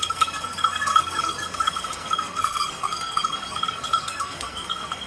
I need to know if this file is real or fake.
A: fake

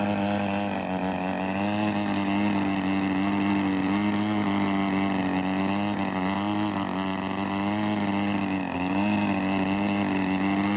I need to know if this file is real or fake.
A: real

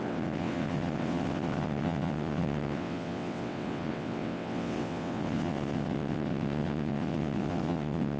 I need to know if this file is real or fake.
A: fake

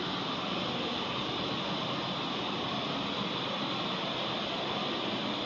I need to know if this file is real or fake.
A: real